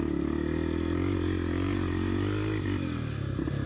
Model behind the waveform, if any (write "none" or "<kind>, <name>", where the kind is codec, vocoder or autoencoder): none